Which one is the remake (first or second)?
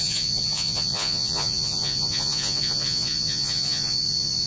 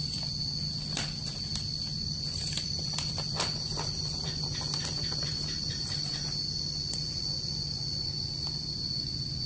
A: first